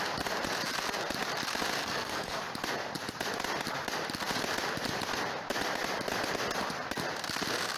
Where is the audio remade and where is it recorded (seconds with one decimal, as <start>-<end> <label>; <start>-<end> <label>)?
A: 0.0-1.8 recorded; 1.8-2.4 remade; 2.4-7.8 recorded